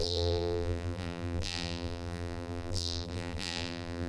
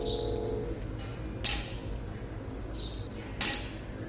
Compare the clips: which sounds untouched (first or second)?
second